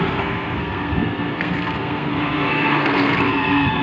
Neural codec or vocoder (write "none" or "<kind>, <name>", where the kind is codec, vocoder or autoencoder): codec, SNAC